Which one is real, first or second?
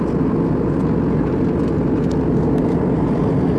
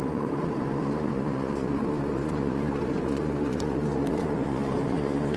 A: first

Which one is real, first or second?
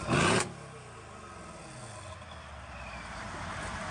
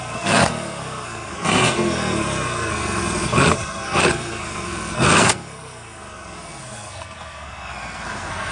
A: first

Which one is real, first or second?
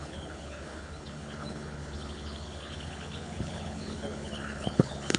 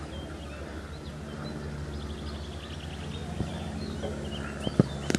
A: second